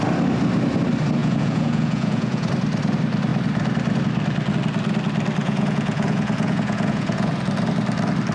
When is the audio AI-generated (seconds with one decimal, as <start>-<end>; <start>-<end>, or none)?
1.2-2.5; 5.4-7.3